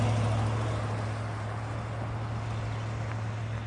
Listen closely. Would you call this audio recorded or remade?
recorded